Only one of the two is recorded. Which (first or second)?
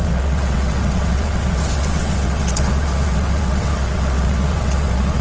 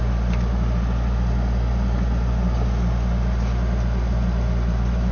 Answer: second